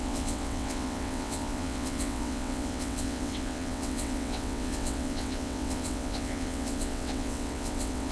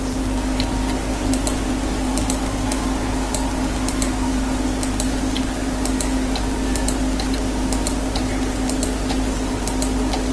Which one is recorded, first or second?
second